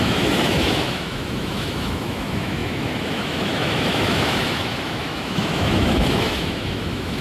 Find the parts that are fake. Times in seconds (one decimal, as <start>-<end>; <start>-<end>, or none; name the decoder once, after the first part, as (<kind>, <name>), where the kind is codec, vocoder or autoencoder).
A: 0.0-7.2 (autoencoder, DAC-VAE)